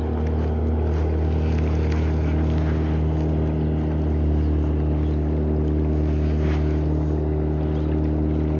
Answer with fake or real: real